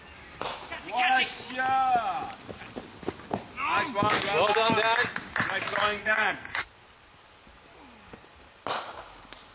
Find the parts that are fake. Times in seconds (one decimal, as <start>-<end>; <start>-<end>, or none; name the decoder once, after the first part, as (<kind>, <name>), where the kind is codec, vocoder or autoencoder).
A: 6.0-6.6 (codec, SNAC)